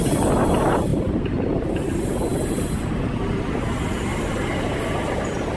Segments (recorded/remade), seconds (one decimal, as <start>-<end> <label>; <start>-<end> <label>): 0.0-4.1 recorded; 4.1-5.6 remade